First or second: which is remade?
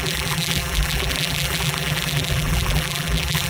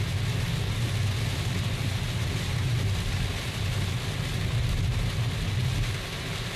first